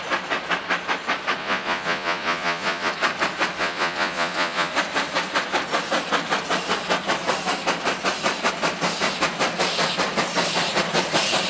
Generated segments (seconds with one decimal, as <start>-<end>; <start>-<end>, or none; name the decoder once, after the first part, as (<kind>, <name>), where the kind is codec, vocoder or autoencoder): 1.4-2.9 (vocoder, Vocos); 3.6-4.7